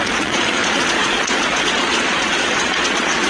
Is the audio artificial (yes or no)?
yes